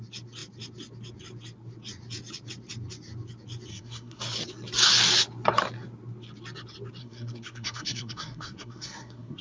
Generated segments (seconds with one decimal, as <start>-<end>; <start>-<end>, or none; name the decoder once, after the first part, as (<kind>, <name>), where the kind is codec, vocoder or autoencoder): 3.7-4.2 (codec, SNAC); 7.0-9.4